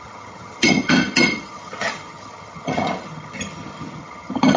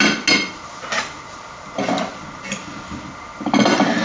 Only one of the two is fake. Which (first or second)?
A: first